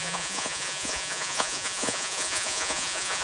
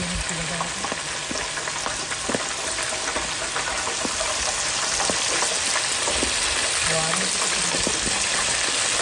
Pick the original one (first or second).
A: second